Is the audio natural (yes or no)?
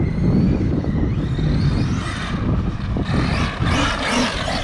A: yes